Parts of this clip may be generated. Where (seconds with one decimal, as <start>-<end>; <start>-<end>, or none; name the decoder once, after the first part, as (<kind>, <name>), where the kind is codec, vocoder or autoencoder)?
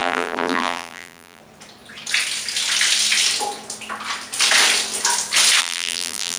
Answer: 0.0-1.4 (vocoder, BigVGAN v2); 5.6-6.4